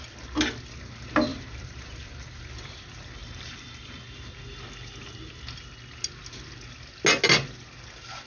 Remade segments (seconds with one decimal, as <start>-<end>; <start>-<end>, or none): 1.3-2.4; 3.2-4.0